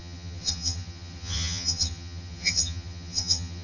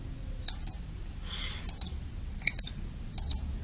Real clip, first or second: second